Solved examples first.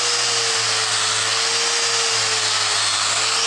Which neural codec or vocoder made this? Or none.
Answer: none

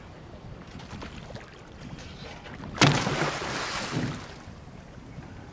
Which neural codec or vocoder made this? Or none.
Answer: none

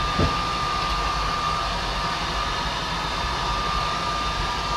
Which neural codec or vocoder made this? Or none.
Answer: none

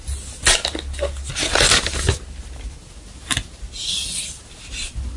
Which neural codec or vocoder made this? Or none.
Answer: none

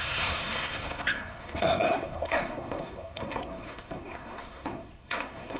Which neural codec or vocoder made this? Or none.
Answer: codec, SNAC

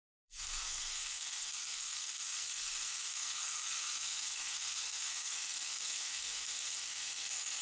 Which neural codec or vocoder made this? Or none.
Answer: codec, SNAC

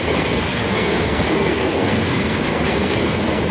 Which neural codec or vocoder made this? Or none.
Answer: codec, SNAC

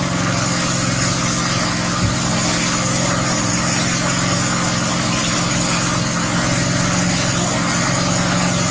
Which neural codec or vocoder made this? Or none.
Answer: none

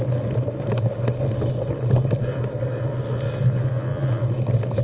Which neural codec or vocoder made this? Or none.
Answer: none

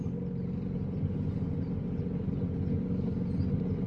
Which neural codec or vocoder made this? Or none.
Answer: none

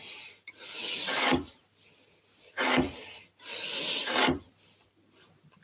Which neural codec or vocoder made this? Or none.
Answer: none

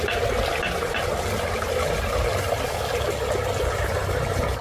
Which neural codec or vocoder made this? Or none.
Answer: none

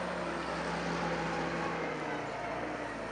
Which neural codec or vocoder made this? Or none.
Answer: none